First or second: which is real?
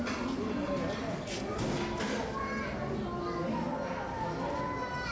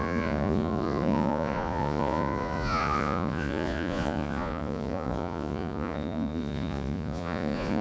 first